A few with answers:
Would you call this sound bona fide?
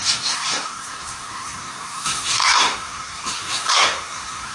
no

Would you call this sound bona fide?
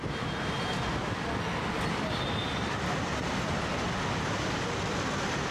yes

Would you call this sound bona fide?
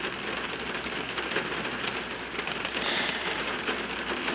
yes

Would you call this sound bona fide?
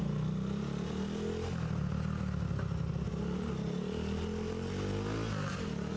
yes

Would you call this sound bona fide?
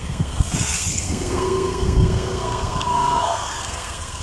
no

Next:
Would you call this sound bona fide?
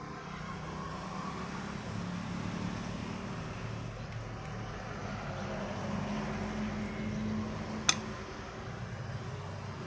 yes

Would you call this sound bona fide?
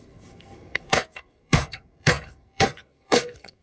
no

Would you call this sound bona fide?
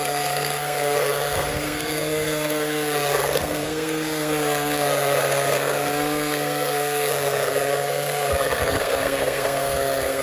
no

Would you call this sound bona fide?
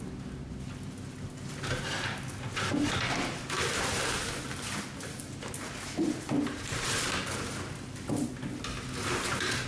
yes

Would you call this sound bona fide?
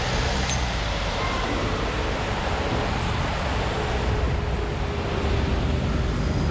yes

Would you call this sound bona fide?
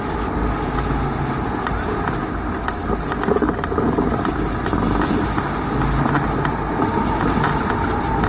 yes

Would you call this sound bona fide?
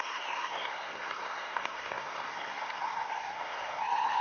no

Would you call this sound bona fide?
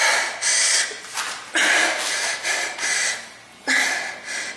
yes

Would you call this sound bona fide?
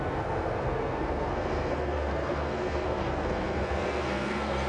no